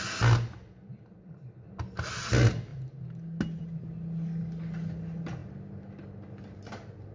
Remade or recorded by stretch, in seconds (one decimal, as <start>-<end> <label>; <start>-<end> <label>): 0.0-7.1 recorded